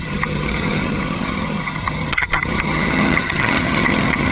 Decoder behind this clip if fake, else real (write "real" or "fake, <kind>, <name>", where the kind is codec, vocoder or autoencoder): fake, vocoder, HiFi-GAN